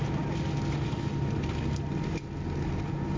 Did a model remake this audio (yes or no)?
no